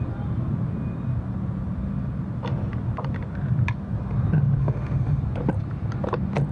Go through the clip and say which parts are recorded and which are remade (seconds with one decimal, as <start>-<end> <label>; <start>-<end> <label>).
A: 0.0-4.6 recorded; 4.6-5.2 remade; 5.2-6.5 recorded